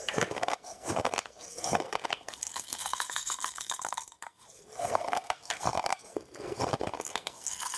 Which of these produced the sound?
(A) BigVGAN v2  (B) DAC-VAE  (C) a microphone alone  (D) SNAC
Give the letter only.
D